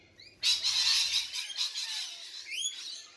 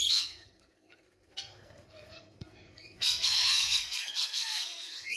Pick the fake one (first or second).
second